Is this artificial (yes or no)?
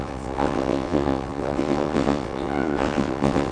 yes